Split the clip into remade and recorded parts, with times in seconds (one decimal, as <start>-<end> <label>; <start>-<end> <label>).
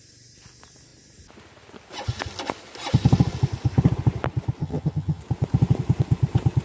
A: 0.0-4.6 recorded; 4.6-5.2 remade; 5.2-6.6 recorded